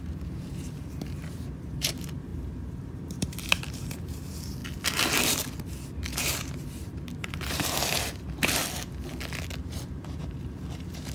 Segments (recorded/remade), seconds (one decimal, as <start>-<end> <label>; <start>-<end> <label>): 0.0-4.6 remade; 4.6-6.2 recorded; 6.2-8.6 remade; 8.6-9.6 recorded; 9.6-11.1 remade